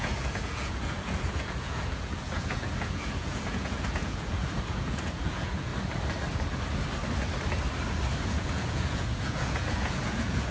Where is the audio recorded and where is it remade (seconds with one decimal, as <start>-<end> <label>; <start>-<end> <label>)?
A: 0.0-5.7 remade; 5.7-8.2 recorded; 8.2-10.5 remade